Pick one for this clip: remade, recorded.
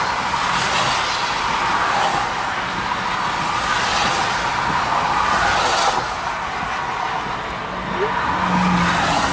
recorded